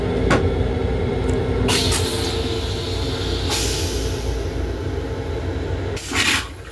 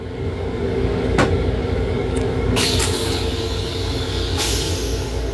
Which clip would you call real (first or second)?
first